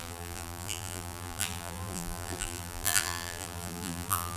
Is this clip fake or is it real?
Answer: fake